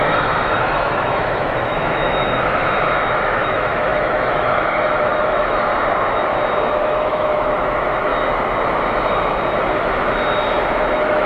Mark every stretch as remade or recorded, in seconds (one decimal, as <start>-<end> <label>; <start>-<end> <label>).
0.0-2.6 remade; 2.6-3.2 recorded; 3.2-5.7 remade; 5.7-6.8 recorded; 6.8-8.1 remade; 8.1-10.9 recorded; 10.9-11.3 remade